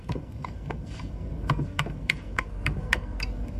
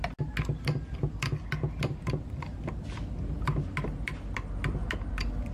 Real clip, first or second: second